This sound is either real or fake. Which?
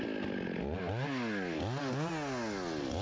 real